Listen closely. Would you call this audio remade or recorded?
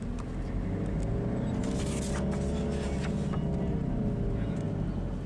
recorded